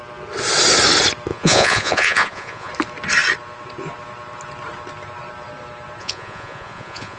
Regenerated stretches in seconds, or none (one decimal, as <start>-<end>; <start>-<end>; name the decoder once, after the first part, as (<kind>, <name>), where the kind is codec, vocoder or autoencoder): 1.3-2.7 (vocoder, Vocos); 6.0-7.2